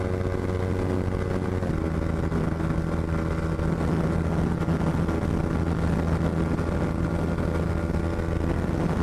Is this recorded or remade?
recorded